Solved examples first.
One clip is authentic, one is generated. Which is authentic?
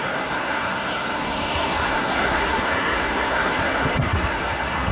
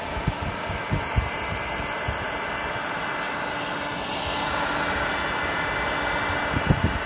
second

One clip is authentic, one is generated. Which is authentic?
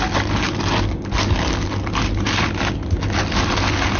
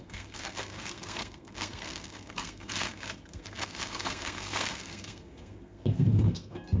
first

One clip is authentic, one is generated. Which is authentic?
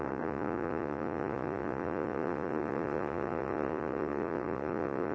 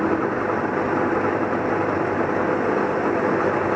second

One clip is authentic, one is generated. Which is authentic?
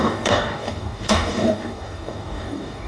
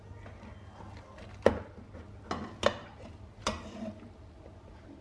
second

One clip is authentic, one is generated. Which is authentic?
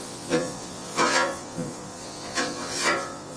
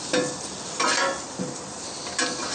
second